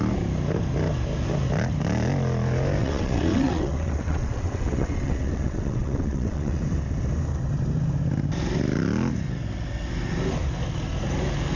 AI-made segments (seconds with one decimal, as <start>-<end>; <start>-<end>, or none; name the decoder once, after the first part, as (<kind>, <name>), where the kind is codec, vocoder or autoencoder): 2.8-6.6 (vocoder, WaveNeXt)